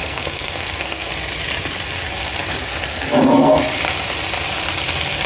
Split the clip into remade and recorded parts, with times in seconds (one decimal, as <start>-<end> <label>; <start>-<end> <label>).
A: 0.0-1.1 remade; 1.1-2.9 recorded; 2.9-3.6 remade; 3.6-5.3 recorded